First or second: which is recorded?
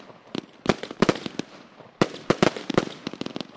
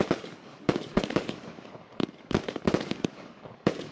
first